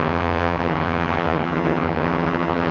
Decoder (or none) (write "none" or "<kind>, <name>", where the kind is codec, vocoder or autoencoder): vocoder, HiFi-GAN